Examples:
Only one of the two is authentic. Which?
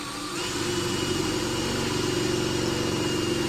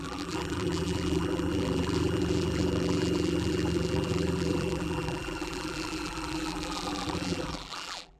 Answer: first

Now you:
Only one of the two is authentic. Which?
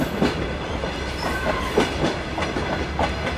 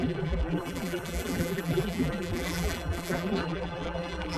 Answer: first